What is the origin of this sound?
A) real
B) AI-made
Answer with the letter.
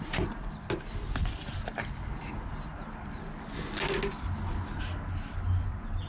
A